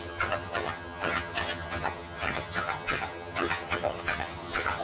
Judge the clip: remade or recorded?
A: remade